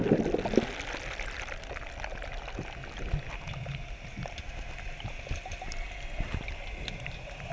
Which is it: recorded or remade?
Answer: recorded